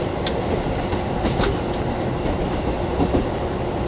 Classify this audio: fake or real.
real